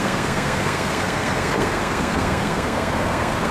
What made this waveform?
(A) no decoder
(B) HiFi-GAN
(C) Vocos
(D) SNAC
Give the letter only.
D